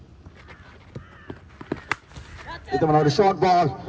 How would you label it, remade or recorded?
recorded